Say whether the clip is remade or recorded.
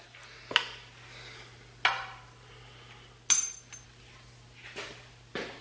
recorded